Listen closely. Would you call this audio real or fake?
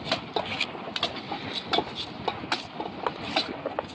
real